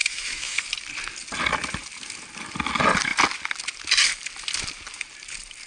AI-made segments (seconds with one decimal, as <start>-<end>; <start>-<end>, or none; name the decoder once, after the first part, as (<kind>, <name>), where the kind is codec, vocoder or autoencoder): 0.0-0.6 (autoencoder, DAC-VAE)